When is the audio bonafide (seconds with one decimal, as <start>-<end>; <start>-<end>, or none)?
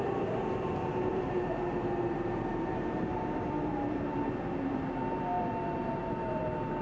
0.4-1.1